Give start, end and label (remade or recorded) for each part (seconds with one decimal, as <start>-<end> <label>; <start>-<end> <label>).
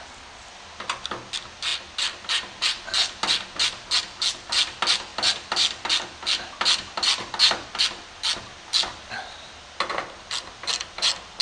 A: 0.0-11.4 recorded